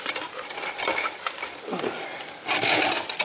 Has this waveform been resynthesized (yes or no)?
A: no